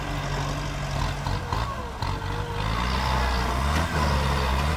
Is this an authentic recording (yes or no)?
yes